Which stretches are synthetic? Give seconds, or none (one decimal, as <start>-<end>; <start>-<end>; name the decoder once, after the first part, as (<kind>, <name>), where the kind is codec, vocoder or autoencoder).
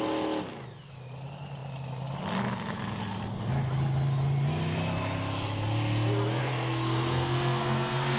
6.4-8.2 (codec, SNAC)